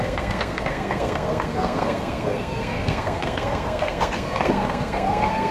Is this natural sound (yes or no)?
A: no